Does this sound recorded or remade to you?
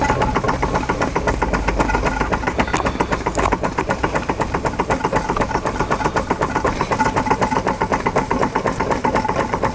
recorded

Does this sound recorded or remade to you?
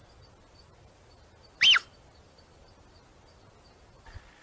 recorded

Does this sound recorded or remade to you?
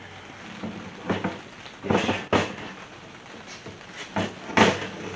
recorded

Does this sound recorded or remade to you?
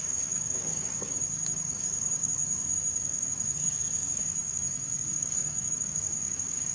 remade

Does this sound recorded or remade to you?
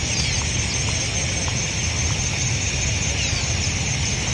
recorded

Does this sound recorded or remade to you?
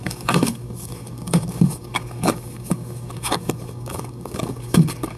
remade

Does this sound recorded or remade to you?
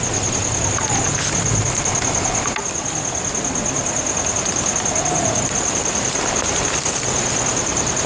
recorded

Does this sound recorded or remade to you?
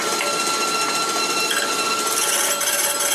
recorded